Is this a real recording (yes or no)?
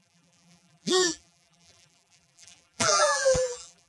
no